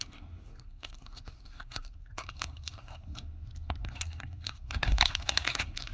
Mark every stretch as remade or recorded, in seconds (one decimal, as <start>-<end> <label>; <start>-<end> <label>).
0.0-5.9 remade